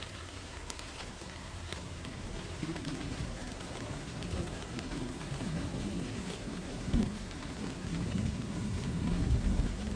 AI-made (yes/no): yes